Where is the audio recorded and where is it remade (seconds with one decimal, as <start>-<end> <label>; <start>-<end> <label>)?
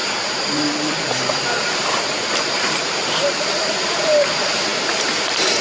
0.0-5.6 remade